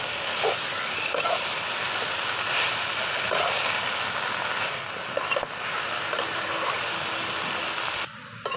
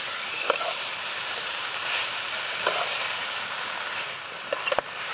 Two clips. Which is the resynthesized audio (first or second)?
second